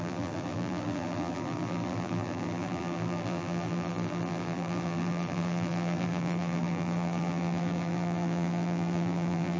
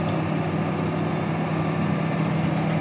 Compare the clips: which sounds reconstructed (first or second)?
first